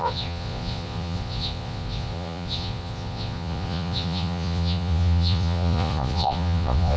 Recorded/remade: remade